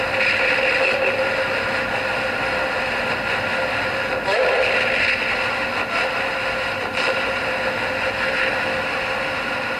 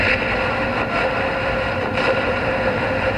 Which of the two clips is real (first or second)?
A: first